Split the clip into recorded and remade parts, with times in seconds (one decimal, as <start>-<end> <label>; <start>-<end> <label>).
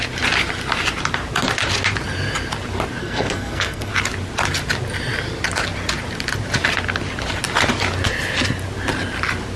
0.0-3.0 recorded; 3.0-3.9 remade; 3.9-9.6 recorded